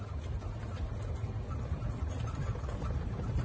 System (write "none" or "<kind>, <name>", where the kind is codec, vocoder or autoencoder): none